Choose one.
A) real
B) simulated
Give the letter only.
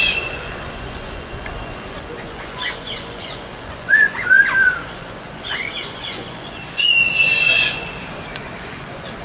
B